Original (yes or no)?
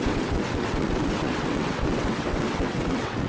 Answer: no